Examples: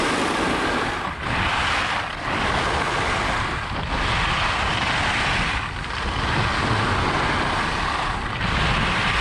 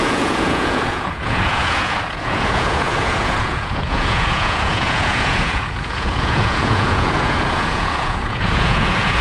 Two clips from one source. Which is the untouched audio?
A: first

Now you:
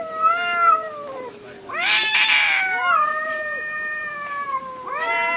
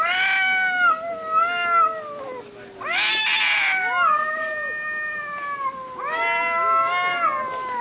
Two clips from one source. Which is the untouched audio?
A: second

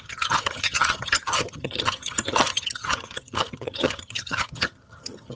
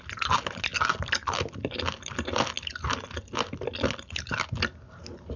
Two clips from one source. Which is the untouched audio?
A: second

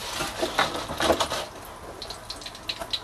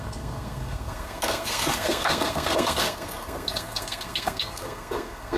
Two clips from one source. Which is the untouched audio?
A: first